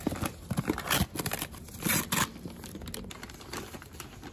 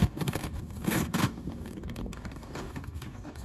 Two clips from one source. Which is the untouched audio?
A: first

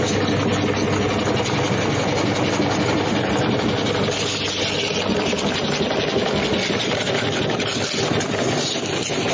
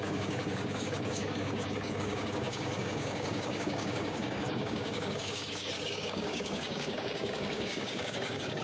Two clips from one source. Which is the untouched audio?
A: first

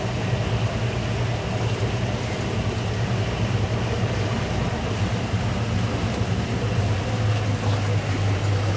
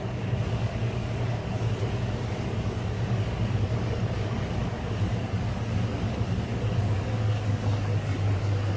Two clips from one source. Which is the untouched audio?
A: first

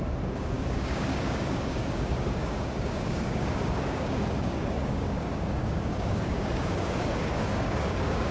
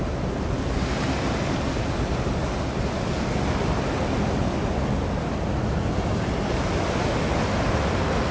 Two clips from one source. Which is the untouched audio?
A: second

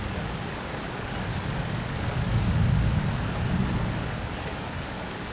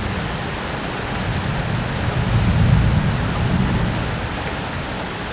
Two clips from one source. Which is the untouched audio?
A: second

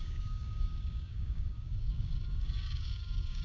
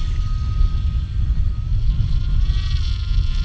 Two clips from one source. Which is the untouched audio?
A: second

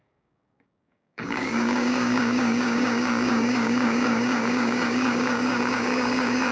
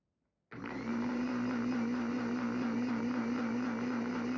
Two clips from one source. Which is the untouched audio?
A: second